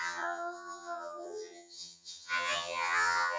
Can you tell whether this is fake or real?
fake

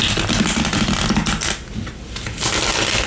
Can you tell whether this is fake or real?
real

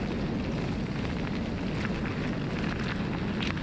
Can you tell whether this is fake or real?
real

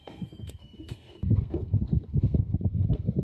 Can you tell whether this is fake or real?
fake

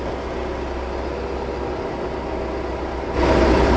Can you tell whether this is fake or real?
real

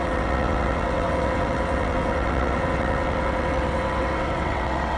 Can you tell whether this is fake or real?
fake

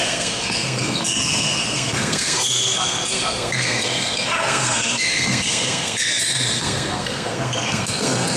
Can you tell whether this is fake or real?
fake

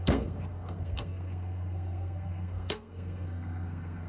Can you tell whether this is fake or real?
fake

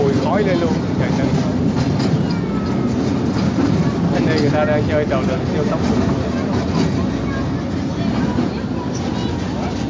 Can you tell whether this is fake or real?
real